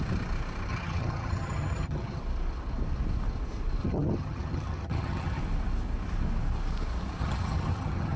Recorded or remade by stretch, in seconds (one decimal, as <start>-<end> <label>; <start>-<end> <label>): 0.0-0.7 recorded; 0.7-2.2 remade; 2.2-3.8 recorded; 3.8-5.4 remade; 5.4-7.2 recorded; 7.2-8.2 remade